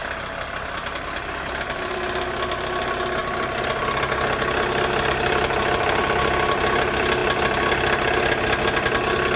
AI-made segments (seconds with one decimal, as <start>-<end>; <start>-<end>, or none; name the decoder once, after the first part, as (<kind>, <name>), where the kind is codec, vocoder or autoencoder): none

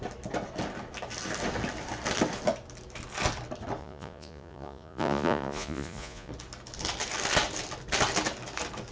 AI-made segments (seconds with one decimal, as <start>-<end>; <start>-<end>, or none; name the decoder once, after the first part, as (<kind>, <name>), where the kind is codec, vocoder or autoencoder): 3.8-6.3 (vocoder, Vocos)

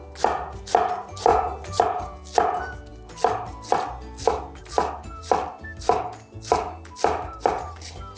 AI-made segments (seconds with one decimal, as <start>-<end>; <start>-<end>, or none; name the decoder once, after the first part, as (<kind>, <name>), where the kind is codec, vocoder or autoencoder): none

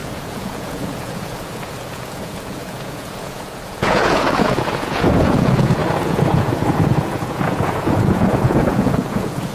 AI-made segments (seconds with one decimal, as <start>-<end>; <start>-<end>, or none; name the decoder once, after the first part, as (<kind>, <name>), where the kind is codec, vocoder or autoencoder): 0.0-9.5 (vocoder, Vocos)